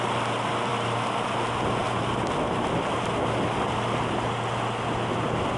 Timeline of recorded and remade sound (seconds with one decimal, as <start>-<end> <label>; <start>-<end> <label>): 0.0-5.6 recorded